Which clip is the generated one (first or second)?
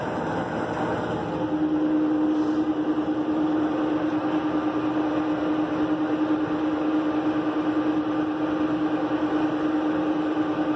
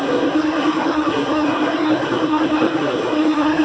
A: second